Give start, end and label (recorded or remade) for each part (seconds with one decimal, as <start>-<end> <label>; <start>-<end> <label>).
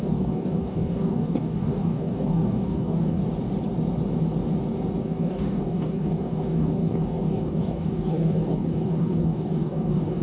0.0-3.2 remade; 3.2-5.0 recorded; 5.0-10.2 remade